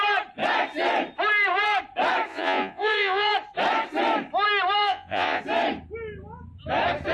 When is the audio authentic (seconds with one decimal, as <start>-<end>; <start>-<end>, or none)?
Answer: 0.0-2.3; 3.3-4.8; 5.4-7.1